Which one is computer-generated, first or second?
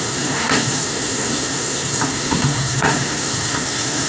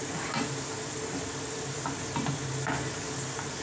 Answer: first